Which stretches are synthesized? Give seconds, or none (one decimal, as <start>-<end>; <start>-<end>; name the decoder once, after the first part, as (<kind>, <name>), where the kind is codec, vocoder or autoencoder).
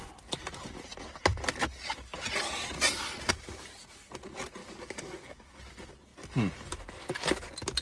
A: 4.6-5.6 (codec, DAC)